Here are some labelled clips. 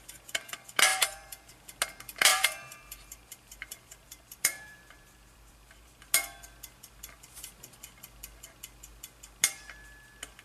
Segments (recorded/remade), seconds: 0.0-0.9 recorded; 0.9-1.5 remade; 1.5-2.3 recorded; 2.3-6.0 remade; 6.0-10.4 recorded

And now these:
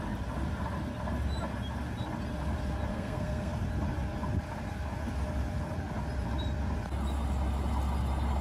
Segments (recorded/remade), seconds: 0.0-2.9 recorded; 2.9-3.5 remade; 3.5-8.4 recorded

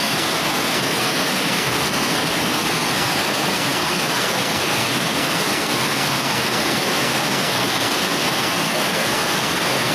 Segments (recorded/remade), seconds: 0.0-9.9 remade

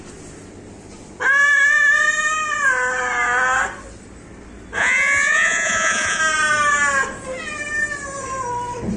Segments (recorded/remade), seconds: 0.0-4.8 recorded; 4.8-6.2 remade; 6.2-9.0 recorded